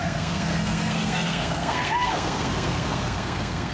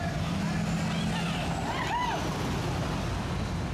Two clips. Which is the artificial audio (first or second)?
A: first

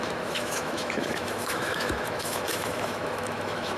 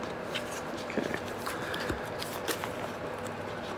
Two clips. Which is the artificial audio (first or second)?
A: first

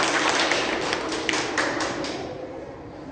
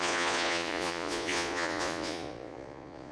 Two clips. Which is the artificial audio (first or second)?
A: second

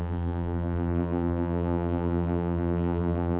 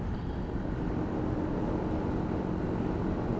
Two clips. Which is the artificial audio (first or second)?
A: first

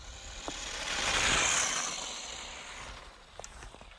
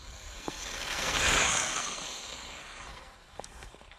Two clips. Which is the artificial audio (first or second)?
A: second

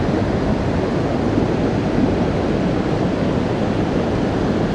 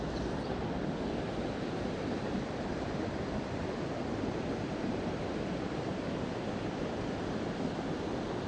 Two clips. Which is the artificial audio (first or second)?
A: second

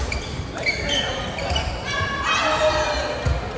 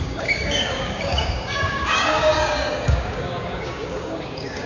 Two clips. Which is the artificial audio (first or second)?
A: second